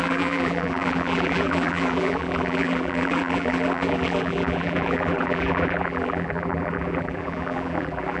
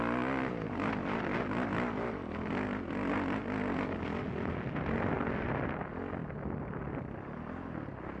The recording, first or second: second